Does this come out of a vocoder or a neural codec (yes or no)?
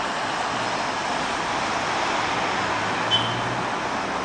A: no